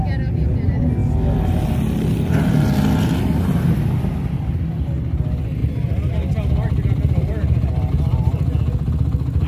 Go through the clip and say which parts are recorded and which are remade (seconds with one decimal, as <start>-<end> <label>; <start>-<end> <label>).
0.0-9.5 recorded